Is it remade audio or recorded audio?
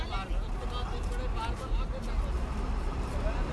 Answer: recorded